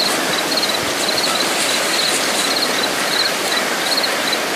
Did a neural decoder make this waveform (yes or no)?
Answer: no